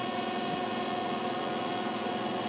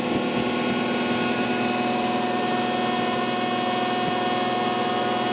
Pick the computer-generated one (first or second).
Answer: first